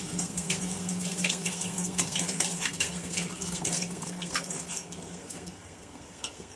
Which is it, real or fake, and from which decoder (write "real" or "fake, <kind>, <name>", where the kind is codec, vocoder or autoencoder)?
fake, codec, SNAC